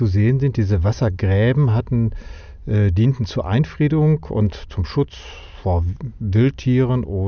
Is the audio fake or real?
real